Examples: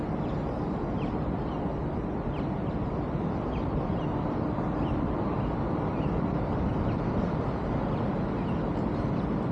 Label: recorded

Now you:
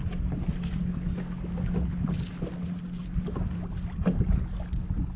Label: recorded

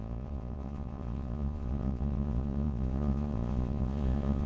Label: remade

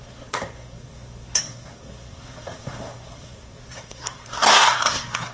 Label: remade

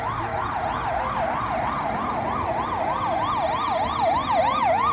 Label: recorded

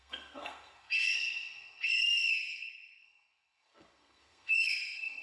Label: remade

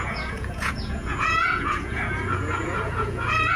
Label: remade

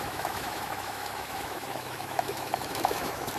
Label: remade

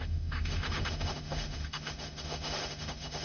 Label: remade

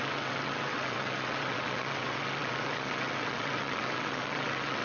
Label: remade